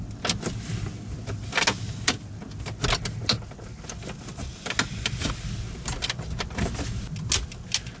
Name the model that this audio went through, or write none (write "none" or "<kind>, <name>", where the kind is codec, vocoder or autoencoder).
none